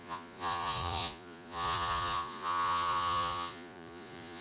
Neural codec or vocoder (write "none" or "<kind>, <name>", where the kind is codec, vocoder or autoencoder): vocoder, Vocos